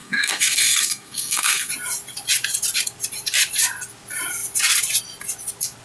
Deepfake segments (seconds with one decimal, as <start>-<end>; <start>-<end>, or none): 0.0-1.7